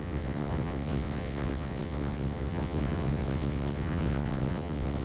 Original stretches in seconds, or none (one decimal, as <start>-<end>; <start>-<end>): none

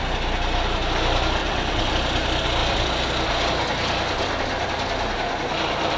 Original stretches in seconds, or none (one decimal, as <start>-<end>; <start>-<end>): 0.0-1.4; 1.9-6.0